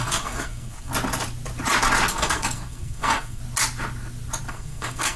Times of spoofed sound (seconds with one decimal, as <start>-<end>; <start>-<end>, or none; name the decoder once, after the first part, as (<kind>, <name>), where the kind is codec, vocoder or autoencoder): 0.0-0.9 (codec, SNAC); 2.1-3.4; 4.5-5.2